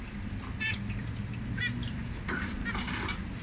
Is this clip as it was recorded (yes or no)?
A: no